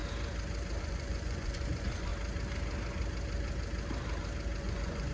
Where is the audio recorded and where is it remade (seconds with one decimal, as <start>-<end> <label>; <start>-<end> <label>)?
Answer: 0.0-0.8 recorded; 0.8-2.1 remade; 2.1-4.6 recorded; 4.6-5.1 remade